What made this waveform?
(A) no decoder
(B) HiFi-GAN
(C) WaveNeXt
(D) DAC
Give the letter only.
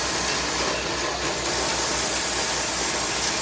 A